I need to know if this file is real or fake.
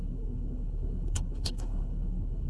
fake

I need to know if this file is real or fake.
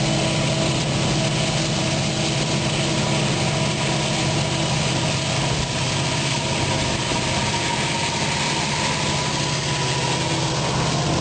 real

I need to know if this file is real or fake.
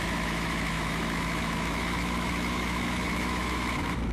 fake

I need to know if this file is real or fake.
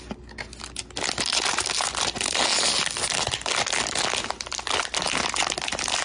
real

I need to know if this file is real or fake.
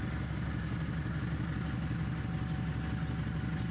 real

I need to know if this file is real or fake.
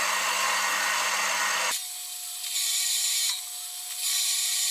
real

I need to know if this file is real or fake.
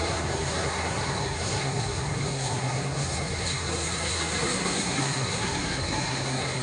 fake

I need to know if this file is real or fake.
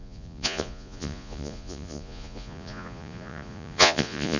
fake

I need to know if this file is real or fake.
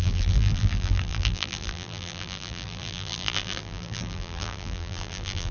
fake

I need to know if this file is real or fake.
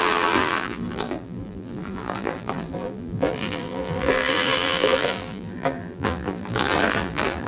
fake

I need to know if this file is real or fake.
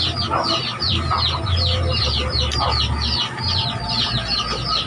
real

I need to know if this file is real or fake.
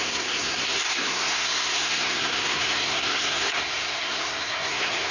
fake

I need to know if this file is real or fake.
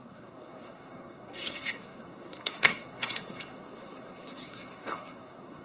fake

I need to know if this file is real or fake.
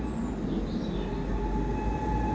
real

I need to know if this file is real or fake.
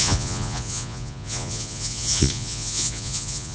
fake